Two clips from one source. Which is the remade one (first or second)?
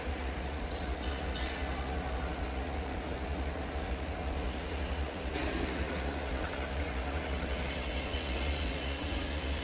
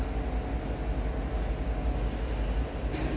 first